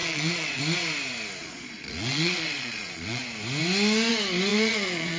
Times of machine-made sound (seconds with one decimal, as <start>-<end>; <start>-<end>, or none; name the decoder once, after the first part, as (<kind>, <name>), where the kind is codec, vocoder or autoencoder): 0.0-0.6 (vocoder, Vocos); 1.4-3.2; 4.5-5.2